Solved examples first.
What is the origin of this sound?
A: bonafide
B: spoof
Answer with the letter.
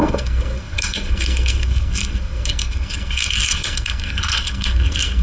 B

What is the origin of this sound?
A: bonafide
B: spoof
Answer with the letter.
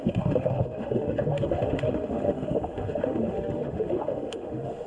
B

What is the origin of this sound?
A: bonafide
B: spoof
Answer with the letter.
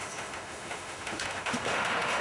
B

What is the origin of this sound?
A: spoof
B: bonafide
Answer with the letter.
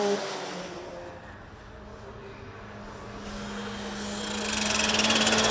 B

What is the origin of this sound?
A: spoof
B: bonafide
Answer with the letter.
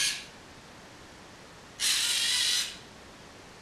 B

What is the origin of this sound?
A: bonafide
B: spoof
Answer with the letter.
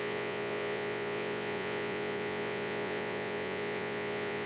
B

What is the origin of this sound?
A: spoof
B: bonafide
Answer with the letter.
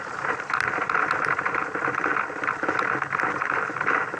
B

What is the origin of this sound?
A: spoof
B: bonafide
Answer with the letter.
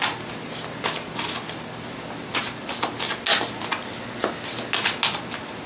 B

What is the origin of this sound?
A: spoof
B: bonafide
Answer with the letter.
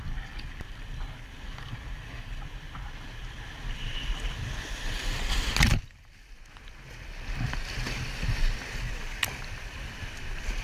B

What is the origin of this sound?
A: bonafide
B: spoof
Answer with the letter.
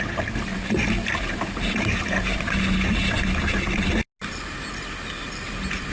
A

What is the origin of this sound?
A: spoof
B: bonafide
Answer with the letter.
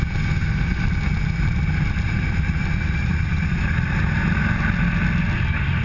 B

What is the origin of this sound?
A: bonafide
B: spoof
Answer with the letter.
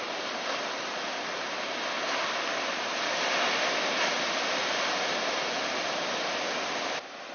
A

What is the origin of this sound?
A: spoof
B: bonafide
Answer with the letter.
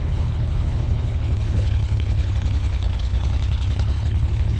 A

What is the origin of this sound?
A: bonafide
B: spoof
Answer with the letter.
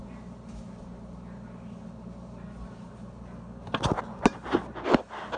A